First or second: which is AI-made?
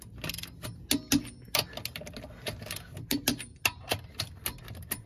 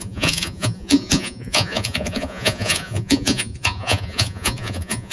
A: second